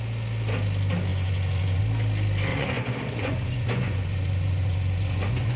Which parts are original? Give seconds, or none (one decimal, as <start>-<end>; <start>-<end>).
0.0-1.1; 1.8-2.5